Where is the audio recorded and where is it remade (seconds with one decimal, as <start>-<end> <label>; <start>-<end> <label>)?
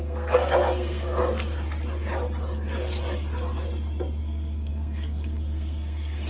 0.0-1.2 remade; 1.2-4.2 recorded; 4.2-6.3 remade